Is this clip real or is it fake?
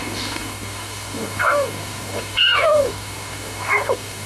fake